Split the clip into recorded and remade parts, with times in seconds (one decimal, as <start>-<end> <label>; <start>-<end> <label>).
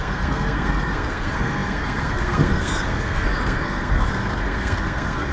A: 0.0-5.3 remade